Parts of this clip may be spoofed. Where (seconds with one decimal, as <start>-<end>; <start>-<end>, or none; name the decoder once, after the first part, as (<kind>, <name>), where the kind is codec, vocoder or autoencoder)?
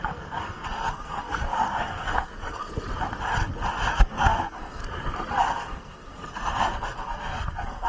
0.0-2.6 (codec, SNAC); 3.9-4.8; 5.3-7.9